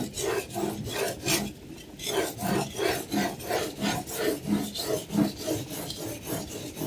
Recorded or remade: recorded